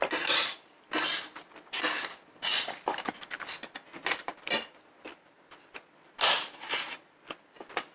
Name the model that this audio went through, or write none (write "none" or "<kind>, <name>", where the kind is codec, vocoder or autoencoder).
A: none